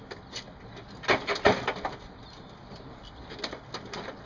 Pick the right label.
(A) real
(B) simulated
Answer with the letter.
A